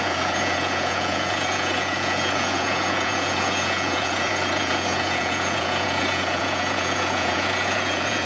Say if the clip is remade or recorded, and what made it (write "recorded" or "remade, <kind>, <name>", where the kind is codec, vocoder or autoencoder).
remade, vocoder, Vocos